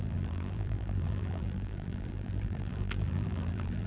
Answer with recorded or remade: remade